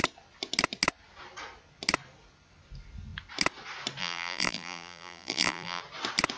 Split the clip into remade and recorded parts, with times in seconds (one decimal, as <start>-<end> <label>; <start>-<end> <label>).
0.0-4.0 recorded; 4.0-5.8 remade; 5.8-6.4 recorded